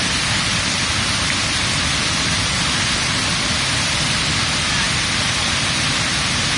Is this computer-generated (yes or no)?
no